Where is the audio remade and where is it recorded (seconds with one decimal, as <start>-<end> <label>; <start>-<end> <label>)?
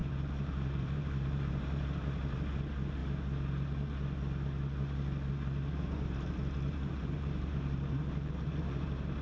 0.0-3.0 remade; 3.0-5.8 recorded; 5.8-9.2 remade